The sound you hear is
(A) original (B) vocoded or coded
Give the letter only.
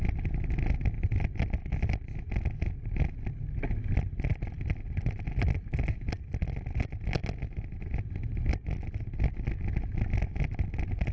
A